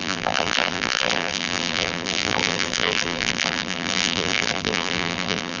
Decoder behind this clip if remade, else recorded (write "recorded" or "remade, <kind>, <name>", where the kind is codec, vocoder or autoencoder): remade, vocoder, BigVGAN v2